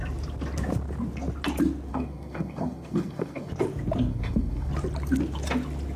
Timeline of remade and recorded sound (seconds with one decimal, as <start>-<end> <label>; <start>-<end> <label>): 0.0-1.9 recorded; 1.9-3.5 remade; 3.5-4.1 recorded; 4.1-4.7 remade; 4.7-6.0 recorded